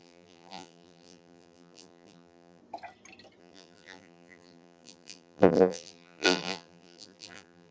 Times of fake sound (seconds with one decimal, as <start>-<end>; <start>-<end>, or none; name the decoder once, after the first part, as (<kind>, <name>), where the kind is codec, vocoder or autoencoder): 0.0-2.6 (vocoder, BigVGAN v2); 3.4-7.7